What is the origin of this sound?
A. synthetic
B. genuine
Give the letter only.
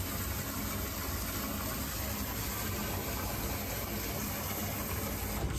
B